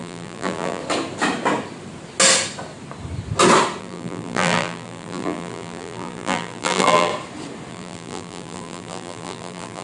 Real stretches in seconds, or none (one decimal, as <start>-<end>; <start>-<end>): 0.8-3.8; 7.1-7.7